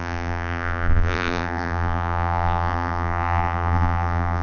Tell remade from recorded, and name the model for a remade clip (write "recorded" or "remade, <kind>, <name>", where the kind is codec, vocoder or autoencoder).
remade, vocoder, BigVGAN v2